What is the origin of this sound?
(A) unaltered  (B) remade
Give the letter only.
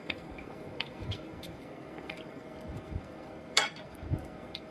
B